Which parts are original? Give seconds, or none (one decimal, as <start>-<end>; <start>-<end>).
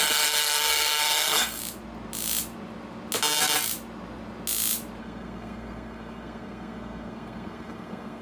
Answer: 1.6-5.0